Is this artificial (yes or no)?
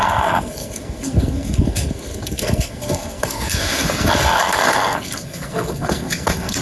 yes